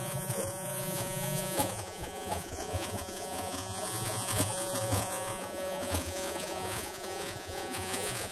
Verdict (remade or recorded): remade